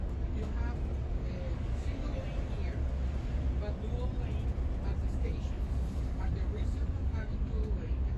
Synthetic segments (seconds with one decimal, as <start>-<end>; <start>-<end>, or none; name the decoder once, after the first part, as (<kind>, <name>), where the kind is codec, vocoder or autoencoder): 0.0-2.2 (codec, DAC); 5.1-8.2